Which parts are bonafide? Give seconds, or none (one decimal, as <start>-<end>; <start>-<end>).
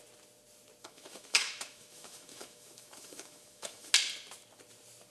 0.0-0.8; 3.9-5.1